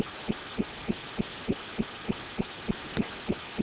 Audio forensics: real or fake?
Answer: real